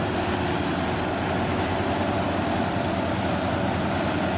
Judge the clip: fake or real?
real